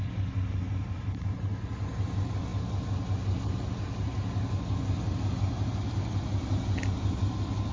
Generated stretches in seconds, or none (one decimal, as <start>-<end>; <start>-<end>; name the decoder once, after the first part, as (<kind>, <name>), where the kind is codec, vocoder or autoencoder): none